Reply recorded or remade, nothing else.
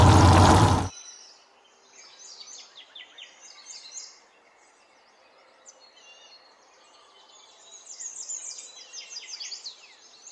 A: recorded